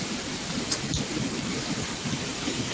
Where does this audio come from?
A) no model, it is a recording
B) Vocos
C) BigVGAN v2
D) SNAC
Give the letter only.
C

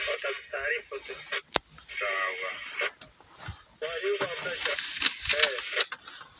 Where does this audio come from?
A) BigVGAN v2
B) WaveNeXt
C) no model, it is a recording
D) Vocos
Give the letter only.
C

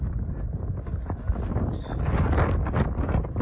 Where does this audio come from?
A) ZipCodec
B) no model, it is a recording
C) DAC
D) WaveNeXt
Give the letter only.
B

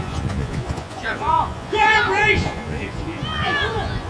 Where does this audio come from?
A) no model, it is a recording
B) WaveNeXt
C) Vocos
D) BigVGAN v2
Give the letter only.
C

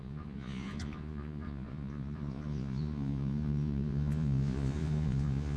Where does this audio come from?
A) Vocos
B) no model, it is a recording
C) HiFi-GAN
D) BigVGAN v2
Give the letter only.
A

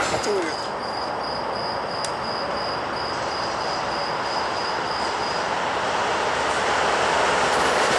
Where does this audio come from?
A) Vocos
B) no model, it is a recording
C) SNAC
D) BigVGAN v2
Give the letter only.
B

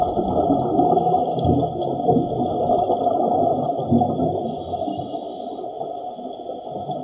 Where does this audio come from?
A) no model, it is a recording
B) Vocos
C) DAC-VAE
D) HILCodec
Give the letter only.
A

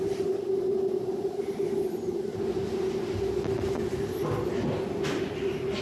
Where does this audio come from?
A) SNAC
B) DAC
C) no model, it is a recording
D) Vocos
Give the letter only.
C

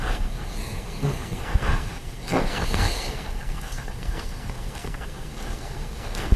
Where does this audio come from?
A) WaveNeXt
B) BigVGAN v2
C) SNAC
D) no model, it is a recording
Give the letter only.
C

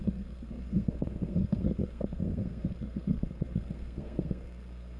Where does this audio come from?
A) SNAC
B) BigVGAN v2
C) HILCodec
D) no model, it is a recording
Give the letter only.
A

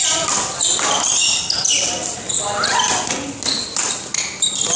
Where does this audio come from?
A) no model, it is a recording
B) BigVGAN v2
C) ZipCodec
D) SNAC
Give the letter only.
A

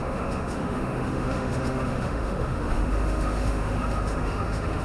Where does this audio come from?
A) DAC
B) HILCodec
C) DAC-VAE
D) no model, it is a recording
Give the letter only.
C